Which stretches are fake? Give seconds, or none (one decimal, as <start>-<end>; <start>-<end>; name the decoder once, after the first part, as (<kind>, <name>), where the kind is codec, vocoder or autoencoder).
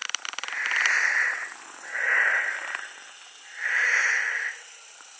1.0-2.6 (vocoder, BigVGAN v2); 4.5-5.2